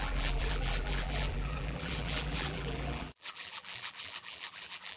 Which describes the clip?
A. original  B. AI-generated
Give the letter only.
B